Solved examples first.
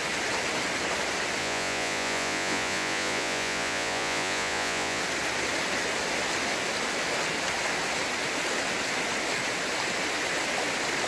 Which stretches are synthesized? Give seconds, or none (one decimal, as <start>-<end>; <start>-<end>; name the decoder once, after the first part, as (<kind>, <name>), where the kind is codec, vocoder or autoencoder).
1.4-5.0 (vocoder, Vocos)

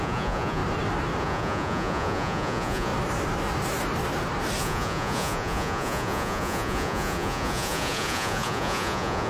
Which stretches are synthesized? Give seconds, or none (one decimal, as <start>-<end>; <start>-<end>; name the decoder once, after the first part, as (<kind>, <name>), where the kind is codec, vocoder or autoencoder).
0.0-0.6 (vocoder, Vocos); 1.2-2.9; 4.6-9.3

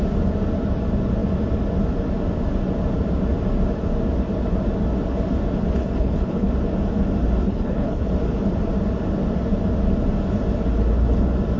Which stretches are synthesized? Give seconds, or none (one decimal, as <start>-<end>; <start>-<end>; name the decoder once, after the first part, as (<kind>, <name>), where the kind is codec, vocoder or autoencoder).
5.8-6.5 (codec, HILCodec); 7.4-8.1

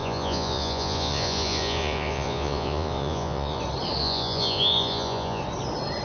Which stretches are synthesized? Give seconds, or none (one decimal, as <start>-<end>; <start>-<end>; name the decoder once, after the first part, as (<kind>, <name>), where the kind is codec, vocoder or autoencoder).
0.0-3.6 (vocoder, Vocos); 4.0-5.4

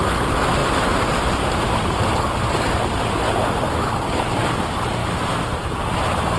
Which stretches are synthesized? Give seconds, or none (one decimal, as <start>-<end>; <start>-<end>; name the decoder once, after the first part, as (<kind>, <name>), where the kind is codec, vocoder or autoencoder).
0.6-2.8 (vocoder, BigVGAN v2); 5.0-5.8

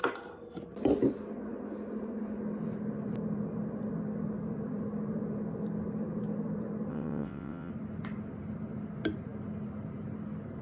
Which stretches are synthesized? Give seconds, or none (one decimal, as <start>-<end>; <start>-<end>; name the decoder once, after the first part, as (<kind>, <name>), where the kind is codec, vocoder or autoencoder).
6.9-7.7 (vocoder, WaveNeXt)